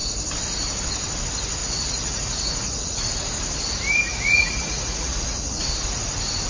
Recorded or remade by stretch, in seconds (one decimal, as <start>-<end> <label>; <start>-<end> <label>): 0.0-1.6 recorded; 1.6-3.1 remade; 3.1-4.1 recorded; 4.1-5.7 remade; 5.7-6.5 recorded